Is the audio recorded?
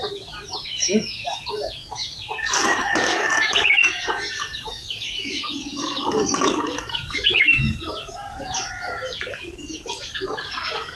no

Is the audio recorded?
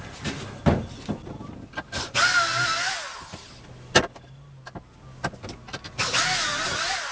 yes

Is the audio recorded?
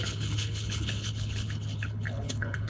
no